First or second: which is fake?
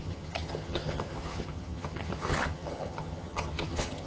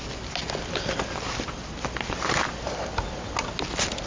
first